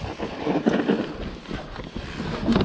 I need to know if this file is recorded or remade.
recorded